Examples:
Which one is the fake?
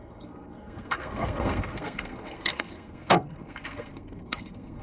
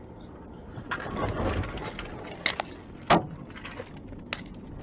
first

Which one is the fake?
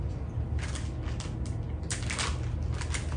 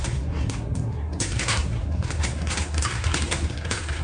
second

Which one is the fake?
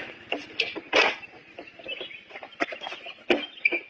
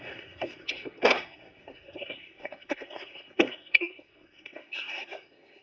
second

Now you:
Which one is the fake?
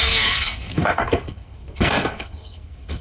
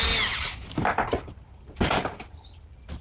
first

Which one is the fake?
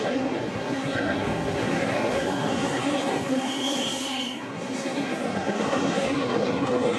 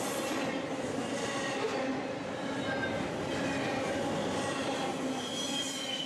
first